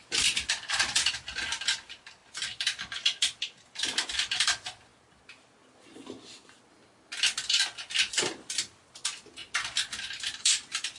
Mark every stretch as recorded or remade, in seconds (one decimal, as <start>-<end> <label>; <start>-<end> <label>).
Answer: 0.0-4.9 remade; 4.9-8.1 recorded; 8.1-9.4 remade; 9.4-10.4 recorded; 10.4-11.0 remade